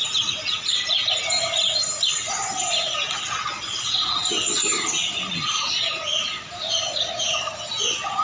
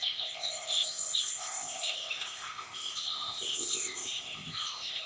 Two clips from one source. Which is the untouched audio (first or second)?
first